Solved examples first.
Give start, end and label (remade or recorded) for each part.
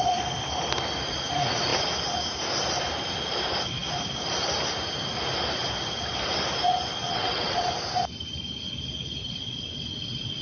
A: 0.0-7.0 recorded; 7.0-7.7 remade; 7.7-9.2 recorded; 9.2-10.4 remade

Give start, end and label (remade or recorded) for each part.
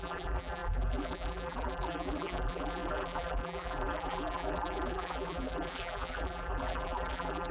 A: 0.0-7.5 remade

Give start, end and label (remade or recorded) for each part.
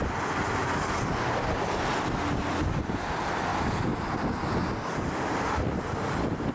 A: 0.0-3.5 recorded; 3.5-4.1 remade; 4.1-6.5 recorded